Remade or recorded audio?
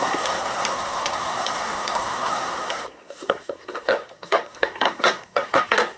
remade